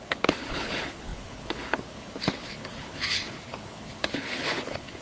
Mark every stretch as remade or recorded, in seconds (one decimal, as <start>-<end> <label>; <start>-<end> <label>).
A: 0.0-5.0 remade